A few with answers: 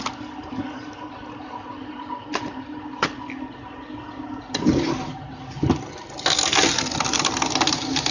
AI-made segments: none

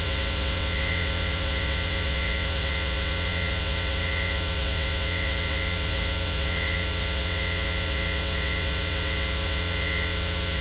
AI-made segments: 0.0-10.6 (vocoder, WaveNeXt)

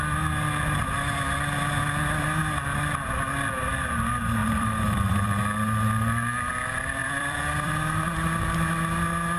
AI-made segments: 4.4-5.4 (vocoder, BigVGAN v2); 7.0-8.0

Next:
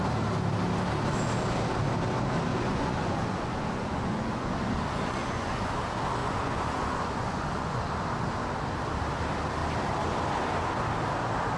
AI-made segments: 2.5-5.8 (vocoder, Vocos); 6.2-7.8

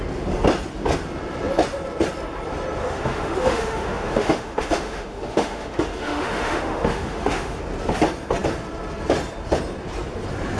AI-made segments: 2.8-7.6 (autoencoder, DAC-VAE)

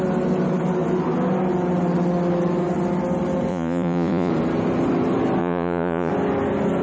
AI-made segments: 3.5-4.3 (vocoder, Vocos); 5.4-6.1